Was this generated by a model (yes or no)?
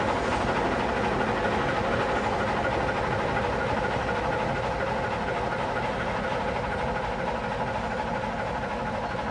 no